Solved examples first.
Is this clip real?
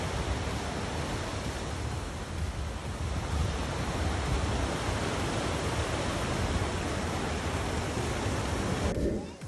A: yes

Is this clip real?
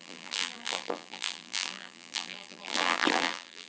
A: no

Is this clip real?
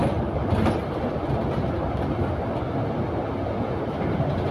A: yes